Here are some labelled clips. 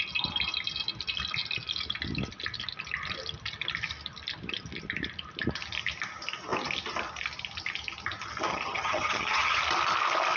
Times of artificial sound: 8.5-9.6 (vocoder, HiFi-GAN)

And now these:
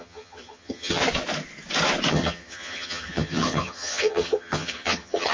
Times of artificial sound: 0.0-1.0 (vocoder, HiFi-GAN); 2.1-5.3

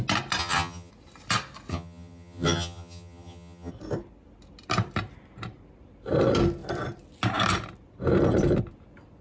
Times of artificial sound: 0.4-0.9 (vocoder, HiFi-GAN); 1.7-3.7

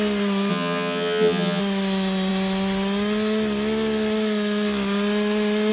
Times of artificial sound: 0.5-1.6 (vocoder, HiFi-GAN)

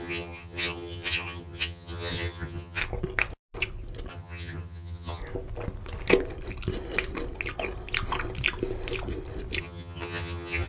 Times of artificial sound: 0.0-2.8 (vocoder, HiFi-GAN); 4.1-5.2; 9.6-10.7